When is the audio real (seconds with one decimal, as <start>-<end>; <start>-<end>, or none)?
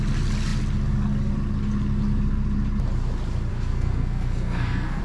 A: 0.0-3.5